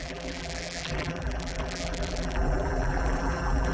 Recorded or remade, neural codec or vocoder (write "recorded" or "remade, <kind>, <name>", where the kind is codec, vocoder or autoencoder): remade, vocoder, BigVGAN v2